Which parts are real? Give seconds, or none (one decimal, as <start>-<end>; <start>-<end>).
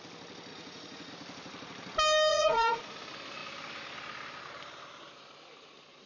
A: 0.0-0.5; 1.1-2.3; 2.8-6.1